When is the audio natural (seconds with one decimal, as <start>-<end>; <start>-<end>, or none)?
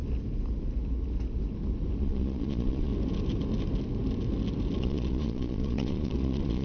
0.0-2.0; 2.9-4.8